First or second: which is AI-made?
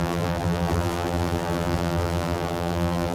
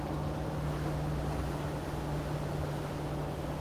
first